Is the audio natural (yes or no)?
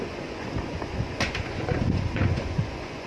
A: no